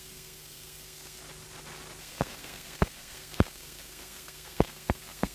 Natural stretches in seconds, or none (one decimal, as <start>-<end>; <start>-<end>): 1.2-2.0